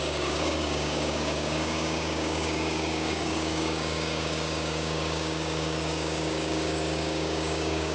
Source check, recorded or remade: remade